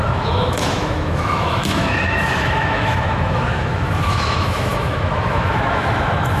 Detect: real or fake fake